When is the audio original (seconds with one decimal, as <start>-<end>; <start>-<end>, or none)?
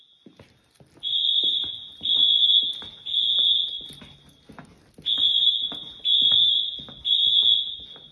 0.0-0.7; 1.7-5.8; 7.3-8.1